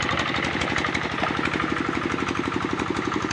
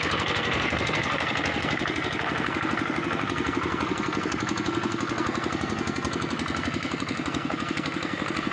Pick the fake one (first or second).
second